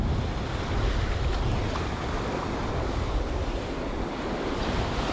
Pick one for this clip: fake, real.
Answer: real